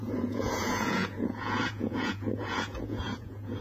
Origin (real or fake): fake